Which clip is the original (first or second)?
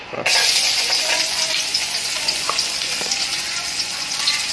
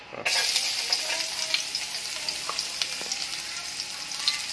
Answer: second